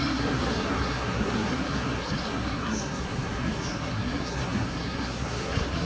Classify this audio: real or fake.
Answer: fake